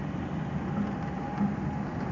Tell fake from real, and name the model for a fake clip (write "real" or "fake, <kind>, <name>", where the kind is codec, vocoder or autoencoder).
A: real